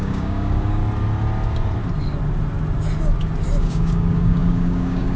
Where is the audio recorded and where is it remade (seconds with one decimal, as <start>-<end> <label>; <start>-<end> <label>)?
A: 0.0-0.8 remade; 0.8-3.6 recorded; 3.6-5.2 remade